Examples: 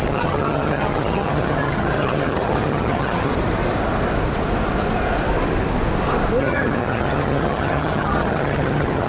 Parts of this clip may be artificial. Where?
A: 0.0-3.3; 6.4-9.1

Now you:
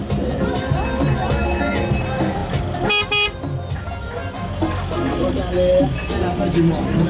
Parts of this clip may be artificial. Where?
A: none